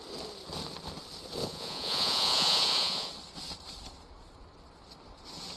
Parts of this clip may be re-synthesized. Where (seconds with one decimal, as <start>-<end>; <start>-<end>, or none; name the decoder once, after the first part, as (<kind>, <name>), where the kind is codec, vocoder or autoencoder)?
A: 1.4-3.1 (vocoder, Vocos)